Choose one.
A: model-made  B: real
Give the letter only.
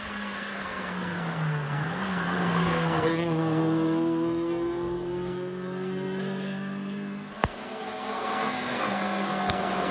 A